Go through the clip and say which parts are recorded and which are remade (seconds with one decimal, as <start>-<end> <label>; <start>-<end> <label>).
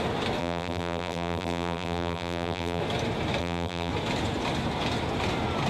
0.0-0.4 recorded; 0.4-2.8 remade; 2.8-3.4 recorded; 3.4-3.9 remade; 3.9-5.7 recorded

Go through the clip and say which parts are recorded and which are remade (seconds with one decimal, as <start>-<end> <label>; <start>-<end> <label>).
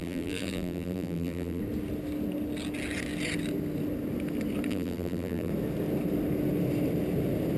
0.0-1.6 remade; 1.6-4.7 recorded; 4.7-5.5 remade; 5.5-7.6 recorded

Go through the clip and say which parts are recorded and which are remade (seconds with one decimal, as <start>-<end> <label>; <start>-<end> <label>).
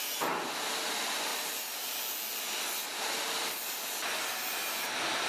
0.0-5.3 recorded